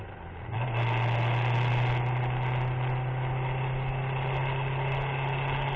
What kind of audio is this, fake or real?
real